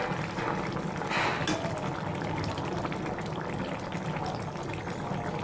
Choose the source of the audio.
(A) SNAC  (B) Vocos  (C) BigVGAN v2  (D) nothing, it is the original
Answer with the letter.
D